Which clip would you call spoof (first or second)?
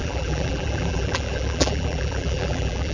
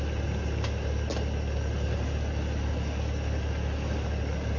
first